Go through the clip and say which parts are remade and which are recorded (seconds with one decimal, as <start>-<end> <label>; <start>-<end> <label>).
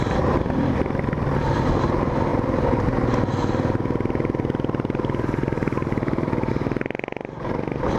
0.0-8.0 recorded